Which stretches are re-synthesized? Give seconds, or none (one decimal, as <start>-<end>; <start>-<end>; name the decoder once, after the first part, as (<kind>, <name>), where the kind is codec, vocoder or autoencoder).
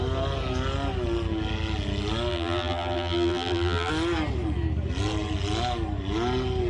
2.3-3.9 (vocoder, BigVGAN v2)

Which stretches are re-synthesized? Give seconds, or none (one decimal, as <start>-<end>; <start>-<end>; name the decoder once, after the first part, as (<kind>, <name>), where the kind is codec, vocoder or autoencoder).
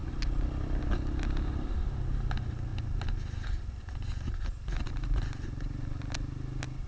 none